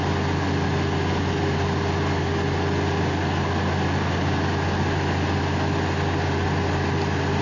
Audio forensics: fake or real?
real